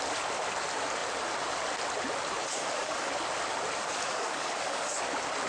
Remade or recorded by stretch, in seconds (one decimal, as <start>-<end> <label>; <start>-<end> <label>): 0.0-2.4 recorded; 2.4-3.1 remade; 3.1-3.8 recorded; 3.8-5.0 remade; 5.0-5.5 recorded